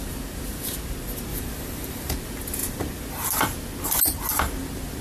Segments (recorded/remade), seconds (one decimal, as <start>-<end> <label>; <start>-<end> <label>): 0.0-1.3 recorded; 1.3-2.1 remade; 2.1-5.0 recorded